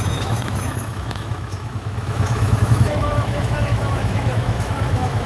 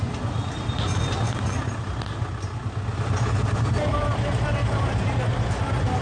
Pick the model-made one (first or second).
first